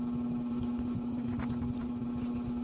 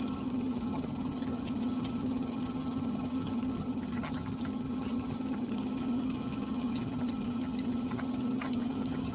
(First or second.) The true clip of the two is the first